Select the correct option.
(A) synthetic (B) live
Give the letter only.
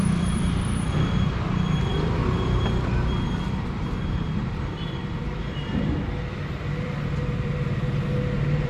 A